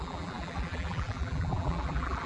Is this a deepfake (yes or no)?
yes